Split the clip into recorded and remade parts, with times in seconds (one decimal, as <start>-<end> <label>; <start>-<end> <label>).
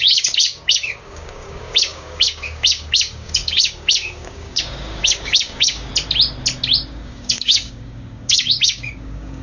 0.0-5.9 remade; 5.9-6.9 recorded; 6.9-9.4 remade